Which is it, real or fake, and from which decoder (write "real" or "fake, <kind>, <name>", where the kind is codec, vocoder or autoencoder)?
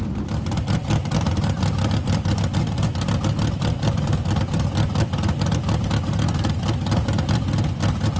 real